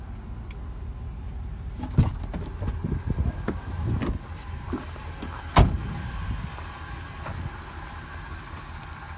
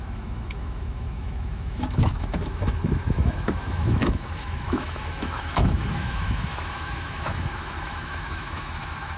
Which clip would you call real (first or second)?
first